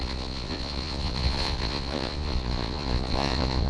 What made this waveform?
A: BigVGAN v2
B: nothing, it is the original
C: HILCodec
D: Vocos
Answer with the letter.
D